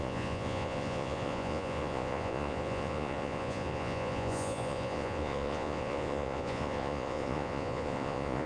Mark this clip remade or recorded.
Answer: remade